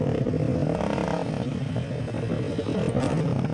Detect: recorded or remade recorded